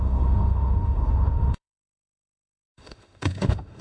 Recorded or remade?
remade